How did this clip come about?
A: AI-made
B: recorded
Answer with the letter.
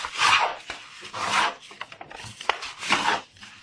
B